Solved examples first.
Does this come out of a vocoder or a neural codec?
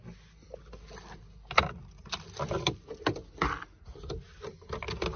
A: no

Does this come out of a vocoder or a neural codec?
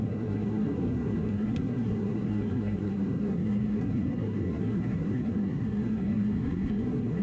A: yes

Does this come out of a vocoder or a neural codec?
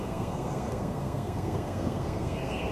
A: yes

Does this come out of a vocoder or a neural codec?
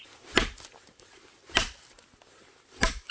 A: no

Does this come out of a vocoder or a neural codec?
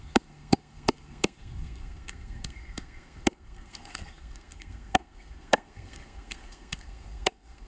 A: yes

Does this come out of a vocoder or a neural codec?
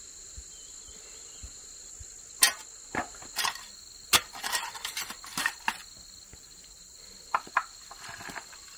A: no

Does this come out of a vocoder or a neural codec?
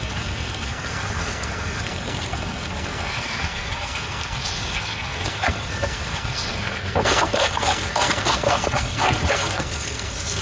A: yes